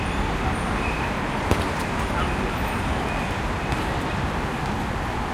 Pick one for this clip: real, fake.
real